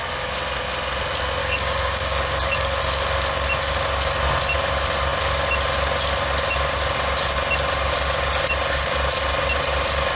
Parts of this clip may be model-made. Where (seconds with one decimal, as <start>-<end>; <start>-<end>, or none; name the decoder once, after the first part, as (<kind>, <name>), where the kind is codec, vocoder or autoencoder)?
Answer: 1.4-2.8 (codec, DAC)